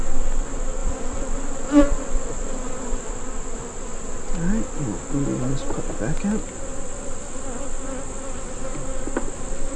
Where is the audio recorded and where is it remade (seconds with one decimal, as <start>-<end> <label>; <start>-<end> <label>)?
0.0-0.8 recorded; 0.8-3.1 remade; 3.1-9.8 recorded